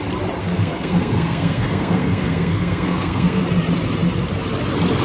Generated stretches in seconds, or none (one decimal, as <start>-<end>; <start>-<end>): 0.4-3.4